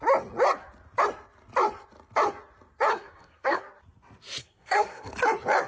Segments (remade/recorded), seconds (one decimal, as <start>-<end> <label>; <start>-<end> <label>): 0.0-2.9 recorded; 2.9-3.6 remade; 3.6-4.4 recorded; 4.4-5.1 remade; 5.1-5.7 recorded